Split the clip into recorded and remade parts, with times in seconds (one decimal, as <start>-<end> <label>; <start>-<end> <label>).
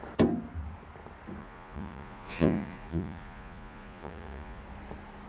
0.0-1.4 recorded; 1.4-4.6 remade; 4.6-5.3 recorded